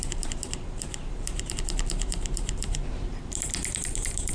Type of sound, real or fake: fake